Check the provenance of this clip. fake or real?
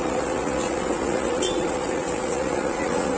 fake